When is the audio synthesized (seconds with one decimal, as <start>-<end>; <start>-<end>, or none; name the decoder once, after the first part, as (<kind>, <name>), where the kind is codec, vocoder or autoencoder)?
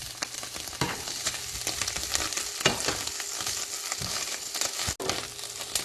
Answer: 0.9-1.4 (codec, HILCodec); 4.1-4.5